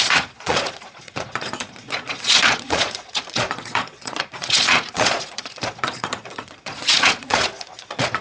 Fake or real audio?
fake